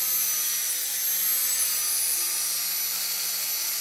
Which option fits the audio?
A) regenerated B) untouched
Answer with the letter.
B